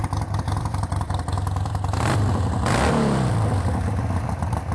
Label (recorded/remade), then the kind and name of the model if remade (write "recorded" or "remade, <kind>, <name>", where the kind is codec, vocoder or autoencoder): remade, vocoder, BigVGAN v2